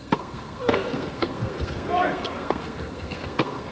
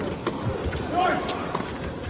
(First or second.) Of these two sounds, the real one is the second